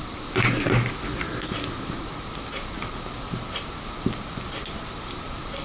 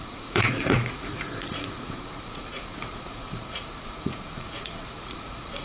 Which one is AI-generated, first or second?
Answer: second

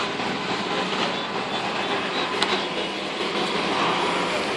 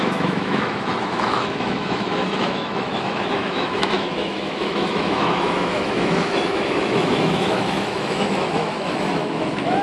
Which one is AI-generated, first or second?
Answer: second